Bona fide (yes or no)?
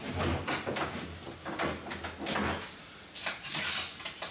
yes